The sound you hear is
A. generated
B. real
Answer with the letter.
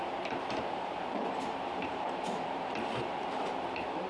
A